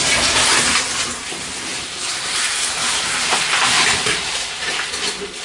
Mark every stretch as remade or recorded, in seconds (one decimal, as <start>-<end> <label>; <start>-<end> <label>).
0.0-1.7 recorded; 1.7-4.9 remade; 4.9-5.4 recorded